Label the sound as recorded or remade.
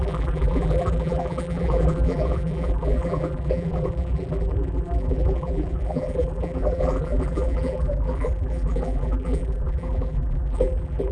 remade